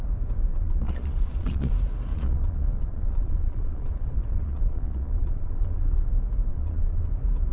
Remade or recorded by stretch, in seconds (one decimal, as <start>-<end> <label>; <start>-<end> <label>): 0.0-0.5 recorded; 0.5-1.7 remade; 1.7-2.1 recorded; 2.1-6.1 remade; 6.1-6.5 recorded; 6.5-7.1 remade; 7.1-7.5 recorded